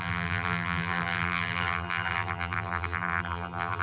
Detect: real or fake fake